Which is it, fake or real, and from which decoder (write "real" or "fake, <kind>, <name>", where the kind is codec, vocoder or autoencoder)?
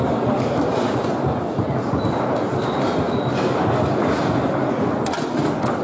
real